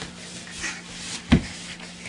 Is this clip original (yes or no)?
yes